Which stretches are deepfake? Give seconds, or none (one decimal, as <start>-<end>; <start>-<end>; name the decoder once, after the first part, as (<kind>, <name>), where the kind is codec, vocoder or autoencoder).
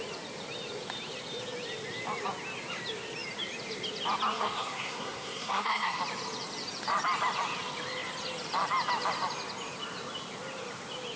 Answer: 4.3-6.0 (codec, SNAC)